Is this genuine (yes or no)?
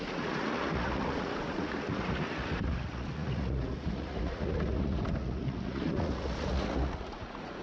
no